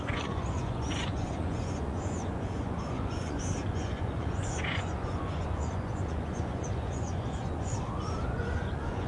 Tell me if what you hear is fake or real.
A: fake